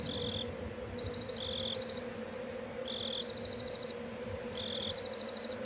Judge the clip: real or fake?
real